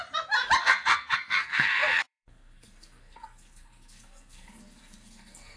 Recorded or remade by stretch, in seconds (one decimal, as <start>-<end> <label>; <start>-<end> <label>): 0.0-0.6 recorded; 0.6-5.6 remade